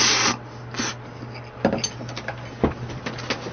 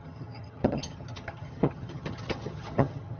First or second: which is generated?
second